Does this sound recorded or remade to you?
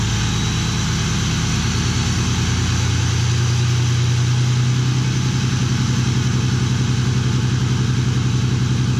recorded